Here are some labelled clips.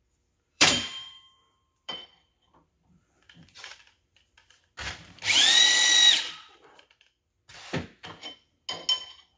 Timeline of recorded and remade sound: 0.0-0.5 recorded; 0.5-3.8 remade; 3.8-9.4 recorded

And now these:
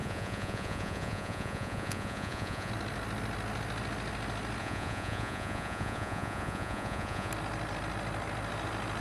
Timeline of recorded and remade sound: 0.0-2.7 remade; 2.7-4.6 recorded; 4.6-7.3 remade; 7.3-9.0 recorded